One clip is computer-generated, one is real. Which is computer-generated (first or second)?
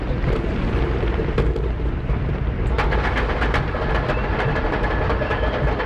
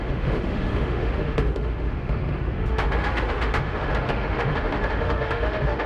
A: second